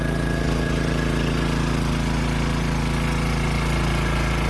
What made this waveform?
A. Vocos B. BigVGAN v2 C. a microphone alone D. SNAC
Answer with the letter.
C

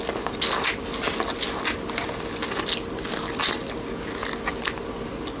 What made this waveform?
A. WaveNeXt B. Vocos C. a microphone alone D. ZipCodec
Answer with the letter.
C